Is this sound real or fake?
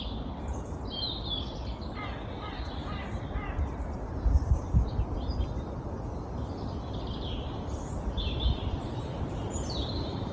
real